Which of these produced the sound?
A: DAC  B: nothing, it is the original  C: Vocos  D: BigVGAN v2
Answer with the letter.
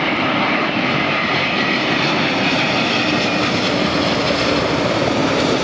D